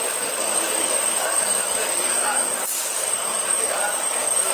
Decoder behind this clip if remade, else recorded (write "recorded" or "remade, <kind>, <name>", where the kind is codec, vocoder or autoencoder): remade, codec, DAC